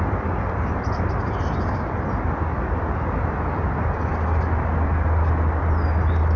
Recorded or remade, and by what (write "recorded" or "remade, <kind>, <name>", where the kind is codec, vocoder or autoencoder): recorded